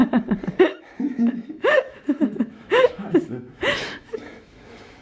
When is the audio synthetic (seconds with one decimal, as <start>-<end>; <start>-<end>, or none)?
0.6-5.0